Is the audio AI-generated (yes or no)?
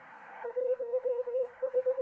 yes